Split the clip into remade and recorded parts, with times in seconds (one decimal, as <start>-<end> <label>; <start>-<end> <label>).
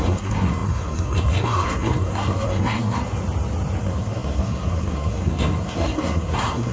0.0-3.0 remade; 3.0-3.8 recorded; 3.8-6.7 remade